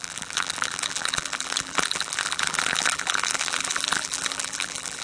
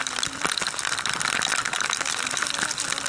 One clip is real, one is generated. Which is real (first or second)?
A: second